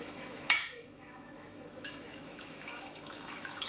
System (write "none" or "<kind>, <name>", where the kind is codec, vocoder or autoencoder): autoencoder, DAC-VAE